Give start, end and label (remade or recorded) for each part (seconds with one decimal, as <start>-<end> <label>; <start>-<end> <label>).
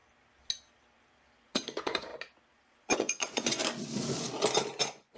0.0-1.4 recorded; 1.4-2.1 remade; 2.1-2.7 recorded; 2.7-3.6 remade; 3.6-4.8 recorded; 4.8-5.2 remade